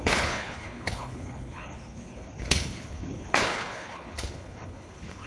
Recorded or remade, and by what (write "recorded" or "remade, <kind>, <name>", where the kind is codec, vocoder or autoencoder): remade, codec, HILCodec